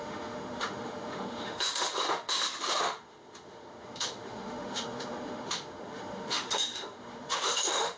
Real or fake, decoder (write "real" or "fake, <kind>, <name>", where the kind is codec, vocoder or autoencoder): fake, autoencoder, DAC-VAE